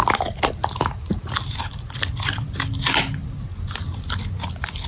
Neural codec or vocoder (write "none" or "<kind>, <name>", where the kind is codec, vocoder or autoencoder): none